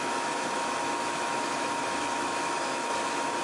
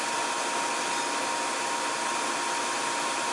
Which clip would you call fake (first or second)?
first